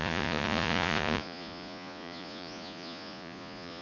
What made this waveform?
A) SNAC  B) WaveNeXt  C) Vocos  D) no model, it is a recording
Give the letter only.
C